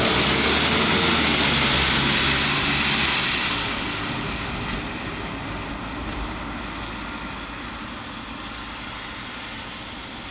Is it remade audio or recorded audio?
recorded